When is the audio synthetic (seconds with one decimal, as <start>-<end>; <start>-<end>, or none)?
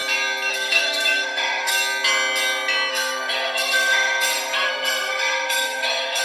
0.5-1.7; 2.9-6.2